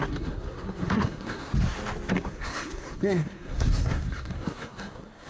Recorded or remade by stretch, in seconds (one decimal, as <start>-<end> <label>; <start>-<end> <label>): 0.0-1.5 remade; 1.5-2.1 recorded; 2.1-5.3 remade

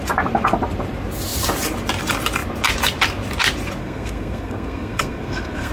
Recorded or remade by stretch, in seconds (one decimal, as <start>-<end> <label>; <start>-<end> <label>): 0.0-3.8 recorded; 3.8-5.7 remade